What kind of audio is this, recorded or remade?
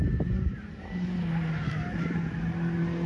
recorded